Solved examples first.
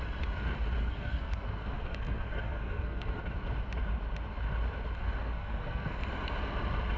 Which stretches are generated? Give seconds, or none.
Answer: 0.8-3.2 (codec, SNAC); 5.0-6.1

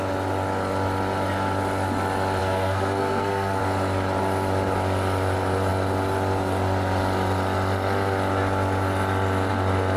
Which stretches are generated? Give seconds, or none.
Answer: 2.4-3.6 (codec, SNAC)

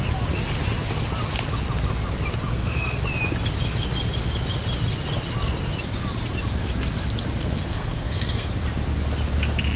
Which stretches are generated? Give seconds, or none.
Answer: 2.5-3.0 (codec, SNAC); 7.4-8.5